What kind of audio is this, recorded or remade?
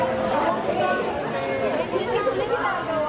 recorded